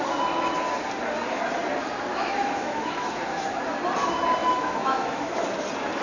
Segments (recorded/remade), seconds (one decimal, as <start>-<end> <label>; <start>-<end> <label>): 0.0-2.1 recorded; 2.1-3.1 remade; 3.1-4.4 recorded; 4.4-5.3 remade; 5.3-6.0 recorded

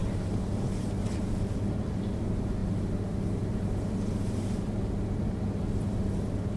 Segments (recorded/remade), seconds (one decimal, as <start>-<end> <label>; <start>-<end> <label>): 0.0-6.6 recorded

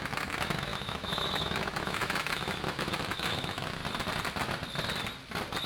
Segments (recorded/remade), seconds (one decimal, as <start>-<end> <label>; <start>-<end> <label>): 0.0-3.8 remade; 3.8-5.7 recorded

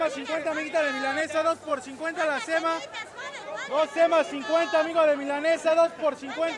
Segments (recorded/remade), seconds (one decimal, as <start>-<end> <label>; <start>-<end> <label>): 0.0-6.6 recorded

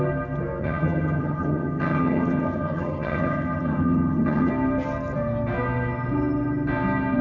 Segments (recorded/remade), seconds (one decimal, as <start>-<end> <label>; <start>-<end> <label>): 0.0-0.6 recorded; 0.6-4.5 remade; 4.5-7.2 recorded

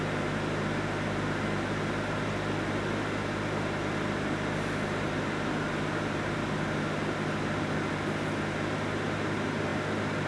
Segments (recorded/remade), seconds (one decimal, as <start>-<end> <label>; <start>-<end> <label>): 0.0-10.3 recorded

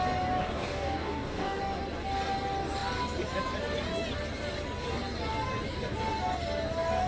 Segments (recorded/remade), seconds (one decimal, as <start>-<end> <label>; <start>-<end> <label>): 0.0-0.4 recorded; 0.4-1.6 remade; 1.6-7.1 recorded